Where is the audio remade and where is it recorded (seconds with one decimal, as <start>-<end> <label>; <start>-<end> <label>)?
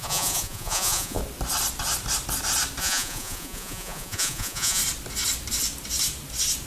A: 0.0-1.2 remade; 1.2-2.8 recorded; 2.8-4.8 remade; 4.8-6.7 recorded